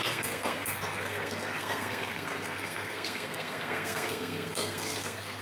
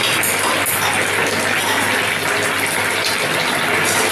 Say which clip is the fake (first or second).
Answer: first